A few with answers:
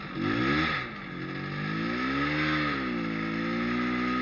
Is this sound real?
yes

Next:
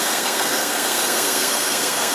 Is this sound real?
no